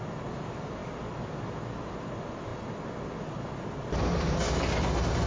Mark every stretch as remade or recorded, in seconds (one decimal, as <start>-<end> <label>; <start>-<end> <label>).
0.0-5.3 recorded